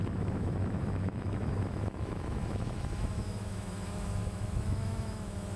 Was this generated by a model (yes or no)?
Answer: yes